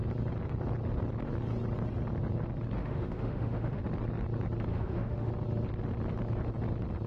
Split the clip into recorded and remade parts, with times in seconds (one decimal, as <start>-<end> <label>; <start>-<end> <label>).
0.0-2.8 recorded; 2.8-3.8 remade; 3.8-4.7 recorded; 4.7-5.3 remade; 5.3-7.1 recorded